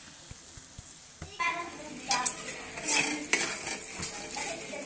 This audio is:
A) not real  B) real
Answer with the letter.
B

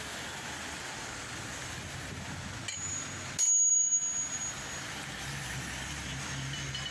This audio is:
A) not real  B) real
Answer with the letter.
B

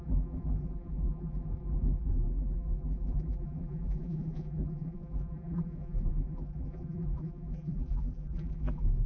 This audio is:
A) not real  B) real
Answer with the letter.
A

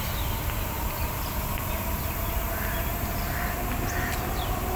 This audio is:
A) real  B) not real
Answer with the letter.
A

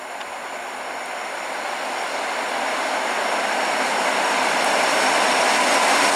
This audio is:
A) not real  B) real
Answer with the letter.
B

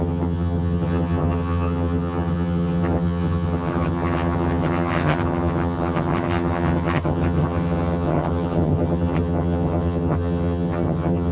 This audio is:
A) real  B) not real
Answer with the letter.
B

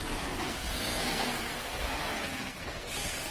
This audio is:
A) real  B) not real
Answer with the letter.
B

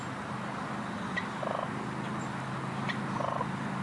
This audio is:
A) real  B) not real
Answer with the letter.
A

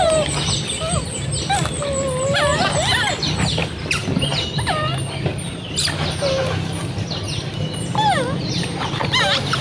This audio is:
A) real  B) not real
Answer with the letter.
A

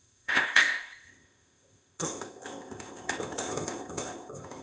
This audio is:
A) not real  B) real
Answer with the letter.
A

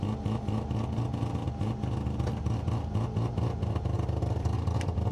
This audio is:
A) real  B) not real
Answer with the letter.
A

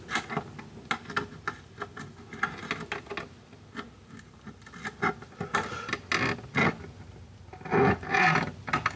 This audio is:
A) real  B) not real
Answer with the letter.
A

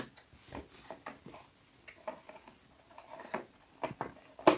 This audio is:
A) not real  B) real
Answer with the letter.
B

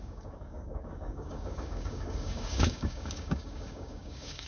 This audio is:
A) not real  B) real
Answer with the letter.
A